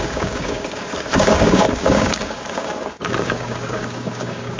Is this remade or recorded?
remade